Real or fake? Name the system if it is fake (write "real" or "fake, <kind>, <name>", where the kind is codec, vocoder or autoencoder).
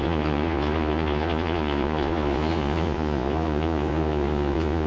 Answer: fake, vocoder, Vocos